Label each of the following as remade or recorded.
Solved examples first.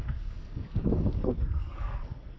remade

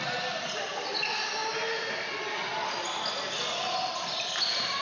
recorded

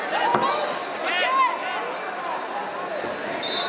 recorded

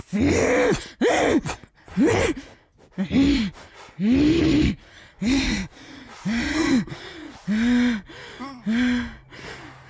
recorded